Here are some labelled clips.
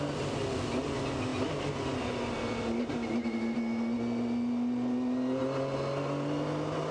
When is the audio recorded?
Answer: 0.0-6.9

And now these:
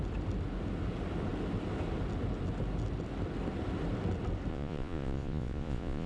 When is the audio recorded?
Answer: 0.0-4.5

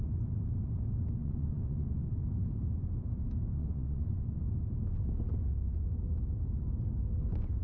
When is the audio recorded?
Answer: 0.0-1.2; 2.0-3.6; 4.4-7.6

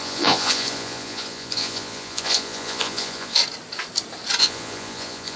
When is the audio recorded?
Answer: 3.4-4.4